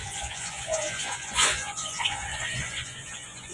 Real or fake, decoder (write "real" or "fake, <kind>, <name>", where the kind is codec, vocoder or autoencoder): fake, vocoder, Vocos